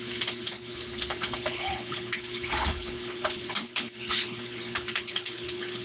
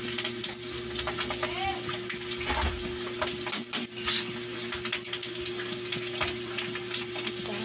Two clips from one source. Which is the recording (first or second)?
second